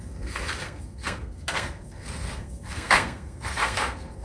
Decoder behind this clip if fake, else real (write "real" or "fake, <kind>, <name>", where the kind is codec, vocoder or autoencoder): fake, codec, SNAC